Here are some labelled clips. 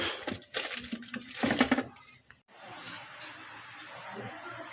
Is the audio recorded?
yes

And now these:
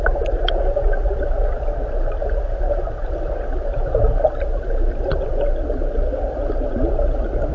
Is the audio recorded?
yes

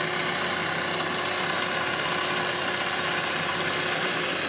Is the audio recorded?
yes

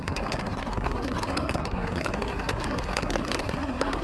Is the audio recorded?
no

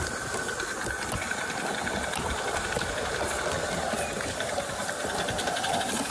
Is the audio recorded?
yes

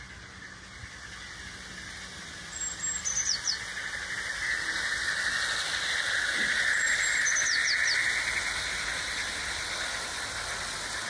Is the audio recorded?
yes